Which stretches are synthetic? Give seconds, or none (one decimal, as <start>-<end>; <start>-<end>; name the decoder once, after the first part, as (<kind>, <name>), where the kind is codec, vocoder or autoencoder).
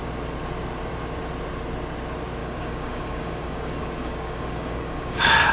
2.4-5.5 (codec, DAC)